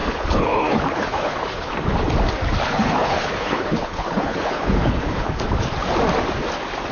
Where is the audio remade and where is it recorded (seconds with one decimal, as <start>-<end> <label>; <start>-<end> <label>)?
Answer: 0.0-1.7 remade; 1.7-2.6 recorded; 2.6-5.4 remade; 5.4-6.9 recorded